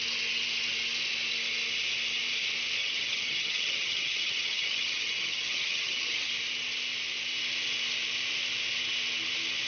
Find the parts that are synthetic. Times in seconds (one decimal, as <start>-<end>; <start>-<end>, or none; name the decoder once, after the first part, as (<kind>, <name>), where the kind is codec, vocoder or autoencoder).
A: 2.8-6.3 (vocoder, HiFi-GAN)